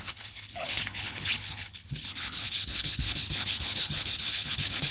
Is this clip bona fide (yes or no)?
no